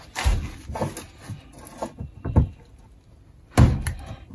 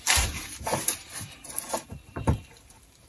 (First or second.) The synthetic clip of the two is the second